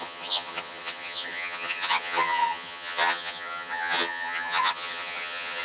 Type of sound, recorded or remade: remade